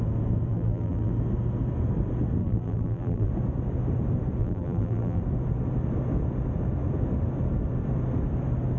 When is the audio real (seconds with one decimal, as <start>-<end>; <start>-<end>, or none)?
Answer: 0.0-0.5; 1.1-2.4; 3.3-4.4; 5.2-8.8